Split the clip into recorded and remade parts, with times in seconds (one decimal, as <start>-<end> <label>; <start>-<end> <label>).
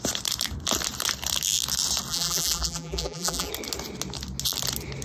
0.0-2.1 recorded; 2.1-3.5 remade; 3.5-5.0 recorded